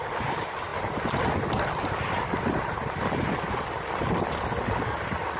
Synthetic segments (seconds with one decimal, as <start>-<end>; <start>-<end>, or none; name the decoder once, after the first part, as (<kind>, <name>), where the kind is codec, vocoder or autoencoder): none